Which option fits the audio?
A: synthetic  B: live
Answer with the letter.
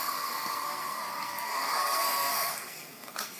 A